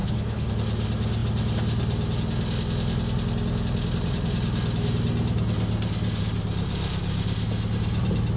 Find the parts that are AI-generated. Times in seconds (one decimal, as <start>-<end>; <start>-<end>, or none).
0.0-0.5